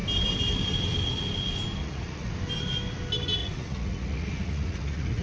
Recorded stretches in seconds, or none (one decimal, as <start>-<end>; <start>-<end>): 0.0-1.8; 2.3-3.4